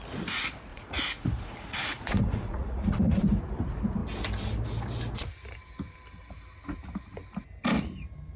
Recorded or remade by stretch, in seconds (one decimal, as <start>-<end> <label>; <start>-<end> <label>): 0.0-0.7 recorded; 0.7-3.2 remade; 3.2-8.4 recorded